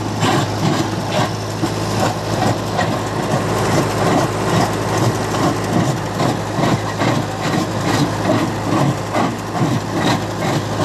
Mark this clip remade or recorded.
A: recorded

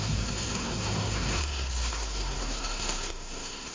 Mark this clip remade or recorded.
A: remade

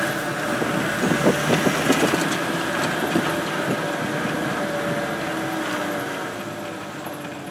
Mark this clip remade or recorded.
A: recorded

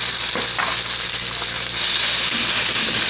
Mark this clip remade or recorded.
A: recorded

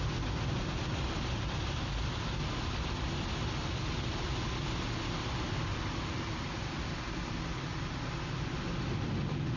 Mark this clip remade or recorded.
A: recorded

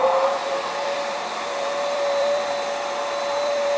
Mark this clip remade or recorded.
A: remade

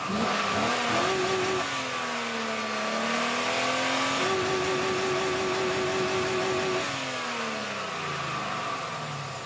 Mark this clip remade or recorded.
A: recorded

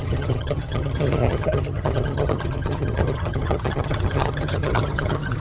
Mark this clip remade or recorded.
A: remade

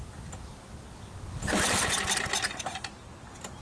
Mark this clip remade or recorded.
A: recorded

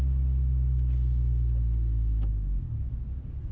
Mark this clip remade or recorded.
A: recorded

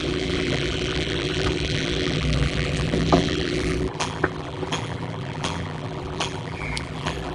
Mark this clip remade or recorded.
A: remade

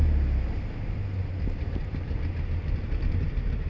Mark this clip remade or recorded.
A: recorded